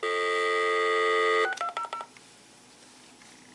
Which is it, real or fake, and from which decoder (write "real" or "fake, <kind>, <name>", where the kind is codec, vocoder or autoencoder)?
real